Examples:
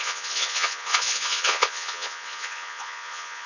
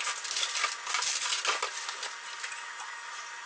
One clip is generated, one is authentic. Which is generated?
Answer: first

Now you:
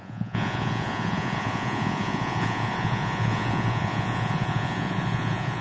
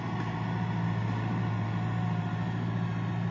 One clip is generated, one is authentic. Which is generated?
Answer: first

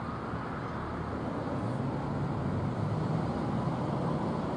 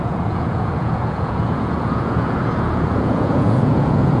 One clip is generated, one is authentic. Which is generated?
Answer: second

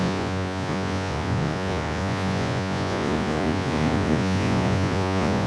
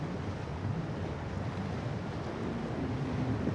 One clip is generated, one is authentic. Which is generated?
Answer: first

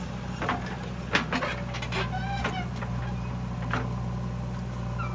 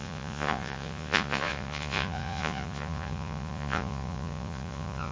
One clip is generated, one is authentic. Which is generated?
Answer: second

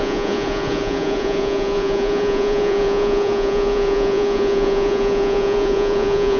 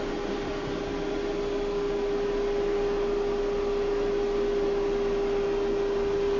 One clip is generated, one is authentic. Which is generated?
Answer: first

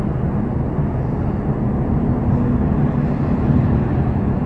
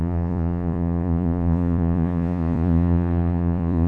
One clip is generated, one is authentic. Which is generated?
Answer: second